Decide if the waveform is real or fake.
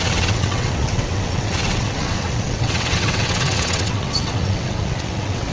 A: fake